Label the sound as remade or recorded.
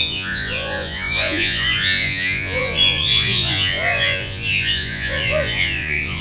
remade